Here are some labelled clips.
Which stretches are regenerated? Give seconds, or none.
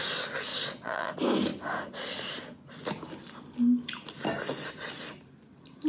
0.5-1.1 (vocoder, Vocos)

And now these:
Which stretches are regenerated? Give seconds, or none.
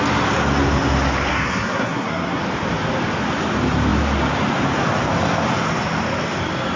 1.3-2.4 (codec, SNAC)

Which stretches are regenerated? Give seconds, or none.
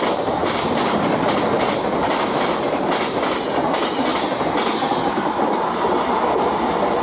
none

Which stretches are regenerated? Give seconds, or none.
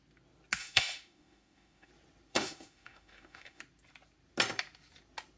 0.6-1.9 (autoencoder, DAC-VAE); 2.3-3.6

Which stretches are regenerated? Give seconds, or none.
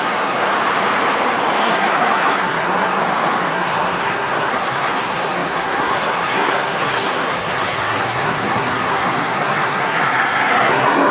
0.0-0.5 (codec, SNAC); 1.6-3.0; 3.5-11.1